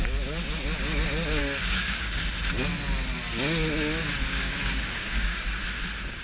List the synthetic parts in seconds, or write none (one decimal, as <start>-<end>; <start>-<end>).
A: 1.4-2.2; 4.2-5.4